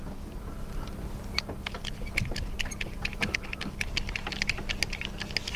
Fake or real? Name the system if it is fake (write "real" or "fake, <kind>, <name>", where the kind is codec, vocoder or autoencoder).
real